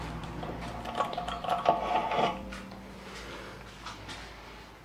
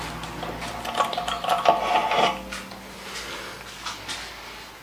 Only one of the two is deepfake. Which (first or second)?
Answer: first